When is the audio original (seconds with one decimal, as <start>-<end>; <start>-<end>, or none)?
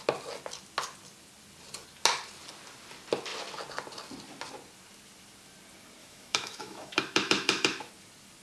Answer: 0.0-6.0; 7.9-8.4